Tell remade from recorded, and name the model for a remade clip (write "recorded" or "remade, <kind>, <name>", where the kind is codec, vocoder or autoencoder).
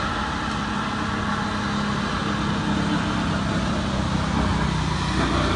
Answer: recorded